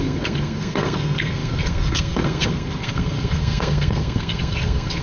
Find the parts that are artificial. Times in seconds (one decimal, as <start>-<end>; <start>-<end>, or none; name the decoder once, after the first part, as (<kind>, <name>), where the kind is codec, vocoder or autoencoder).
0.0-5.0 (codec, SNAC)